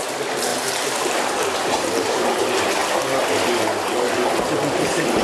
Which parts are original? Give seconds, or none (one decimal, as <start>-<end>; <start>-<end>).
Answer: 0.0-0.5; 2.4-5.2

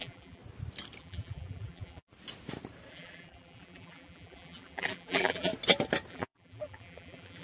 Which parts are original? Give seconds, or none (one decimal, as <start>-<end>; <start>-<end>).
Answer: 0.4-1.0; 2.1-2.9; 5.5-6.1